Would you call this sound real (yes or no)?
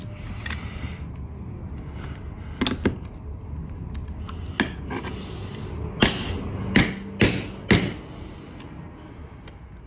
yes